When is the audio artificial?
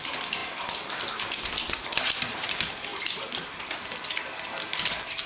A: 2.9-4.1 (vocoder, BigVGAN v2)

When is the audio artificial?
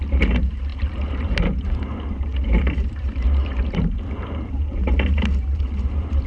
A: 0.0-6.3 (vocoder, BigVGAN v2)